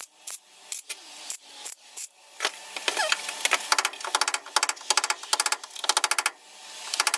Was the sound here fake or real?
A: real